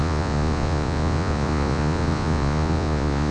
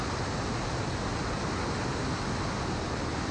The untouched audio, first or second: second